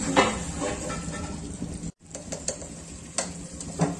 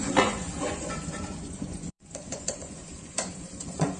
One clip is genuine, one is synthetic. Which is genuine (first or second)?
first